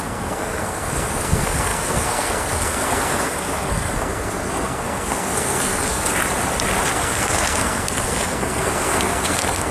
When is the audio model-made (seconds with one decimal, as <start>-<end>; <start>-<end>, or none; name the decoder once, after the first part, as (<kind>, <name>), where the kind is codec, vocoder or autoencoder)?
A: 0.0-6.1 (codec, SNAC); 6.9-9.7